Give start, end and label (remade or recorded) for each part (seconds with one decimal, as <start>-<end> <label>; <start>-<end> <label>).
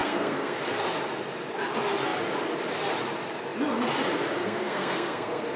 0.0-0.6 remade; 0.6-4.4 recorded; 4.4-5.6 remade